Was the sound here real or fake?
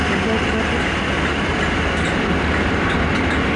real